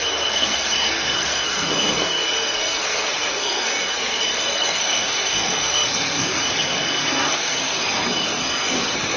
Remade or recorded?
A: remade